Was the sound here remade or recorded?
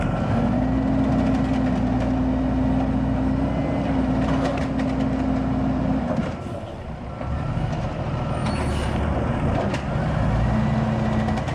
recorded